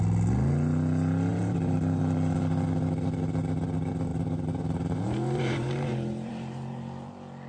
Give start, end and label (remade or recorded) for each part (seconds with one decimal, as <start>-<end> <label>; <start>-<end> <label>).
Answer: 0.0-1.3 recorded; 1.3-2.0 remade; 2.0-4.1 recorded; 4.1-7.1 remade; 7.1-7.5 recorded